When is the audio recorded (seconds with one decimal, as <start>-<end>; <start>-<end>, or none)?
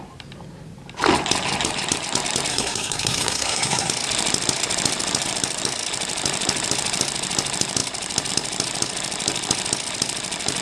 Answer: 0.0-2.5; 3.9-10.6